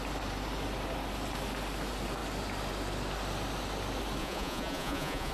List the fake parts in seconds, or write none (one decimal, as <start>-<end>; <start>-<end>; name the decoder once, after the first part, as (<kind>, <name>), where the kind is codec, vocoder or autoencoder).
4.2-5.3 (vocoder, Vocos)